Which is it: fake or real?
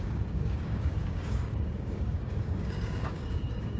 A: fake